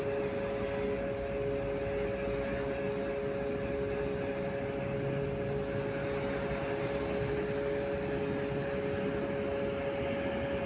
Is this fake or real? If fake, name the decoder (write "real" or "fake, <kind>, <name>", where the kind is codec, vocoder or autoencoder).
real